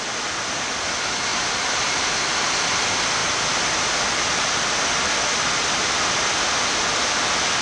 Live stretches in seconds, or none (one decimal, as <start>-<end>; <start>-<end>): 0.0-1.3; 2.2-7.6